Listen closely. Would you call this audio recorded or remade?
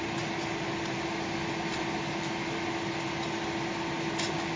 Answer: recorded